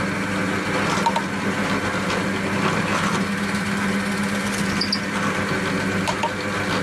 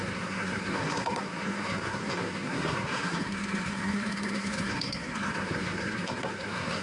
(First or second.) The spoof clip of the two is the second